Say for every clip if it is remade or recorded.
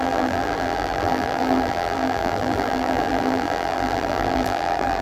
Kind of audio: remade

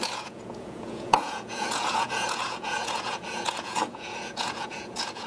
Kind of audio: remade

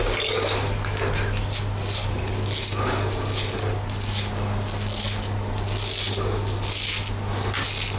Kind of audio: recorded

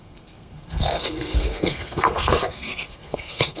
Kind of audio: remade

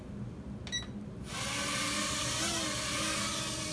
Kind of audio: recorded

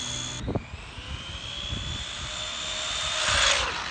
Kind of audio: recorded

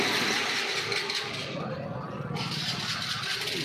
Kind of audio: recorded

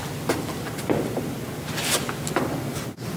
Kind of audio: recorded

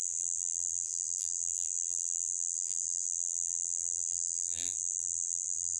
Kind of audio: remade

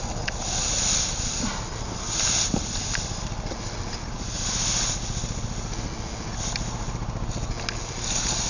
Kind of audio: recorded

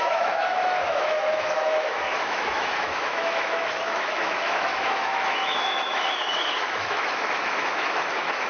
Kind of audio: remade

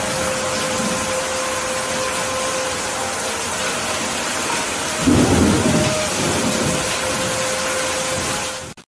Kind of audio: recorded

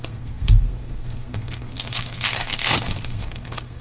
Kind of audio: remade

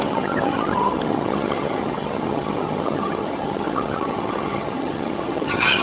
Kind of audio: remade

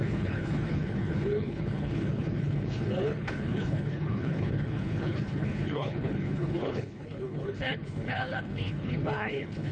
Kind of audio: remade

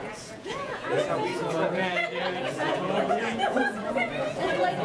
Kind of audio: remade